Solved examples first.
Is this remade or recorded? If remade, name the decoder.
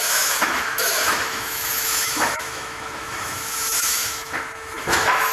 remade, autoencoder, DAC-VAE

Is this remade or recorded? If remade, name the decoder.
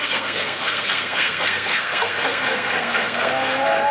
remade, codec, SNAC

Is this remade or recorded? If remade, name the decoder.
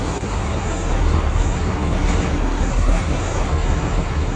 remade, codec, SNAC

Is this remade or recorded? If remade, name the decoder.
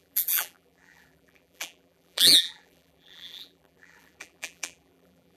remade, vocoder, BigVGAN v2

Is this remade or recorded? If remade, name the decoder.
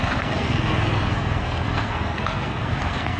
remade, codec, SNAC